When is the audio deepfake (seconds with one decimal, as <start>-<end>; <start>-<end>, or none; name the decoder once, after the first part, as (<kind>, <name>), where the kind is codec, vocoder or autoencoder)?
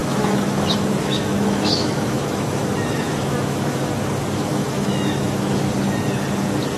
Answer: 0.0-3.8 (autoencoder, DAC-VAE); 4.5-5.7